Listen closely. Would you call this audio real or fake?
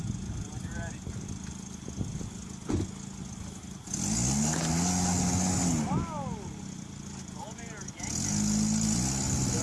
real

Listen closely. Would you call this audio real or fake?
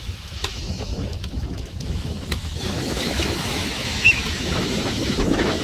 fake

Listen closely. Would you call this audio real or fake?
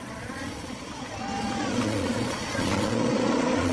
fake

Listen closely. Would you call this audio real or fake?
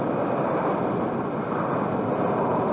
real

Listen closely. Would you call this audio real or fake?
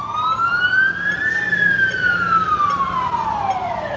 real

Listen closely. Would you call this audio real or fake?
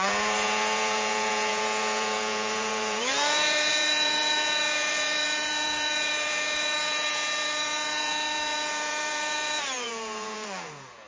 fake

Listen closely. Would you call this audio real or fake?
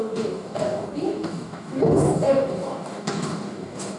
fake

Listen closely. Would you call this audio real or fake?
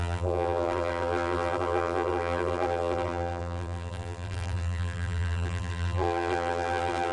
fake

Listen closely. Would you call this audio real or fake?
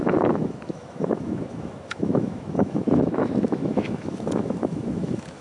fake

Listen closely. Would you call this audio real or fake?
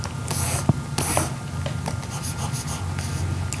real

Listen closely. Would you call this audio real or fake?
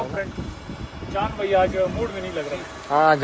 real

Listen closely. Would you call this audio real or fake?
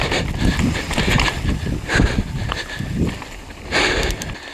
real